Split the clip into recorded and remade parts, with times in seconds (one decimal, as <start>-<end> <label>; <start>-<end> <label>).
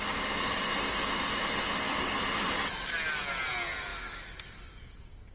0.0-5.3 recorded